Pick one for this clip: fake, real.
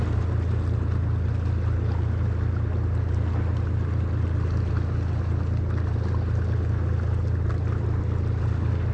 real